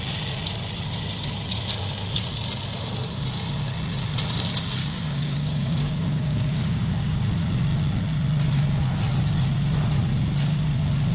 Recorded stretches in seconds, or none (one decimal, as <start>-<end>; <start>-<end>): 0.0-4.8; 7.2-11.1